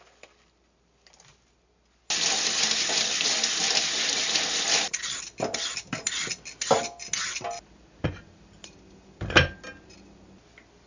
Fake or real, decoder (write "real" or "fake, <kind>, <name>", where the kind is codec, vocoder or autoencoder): real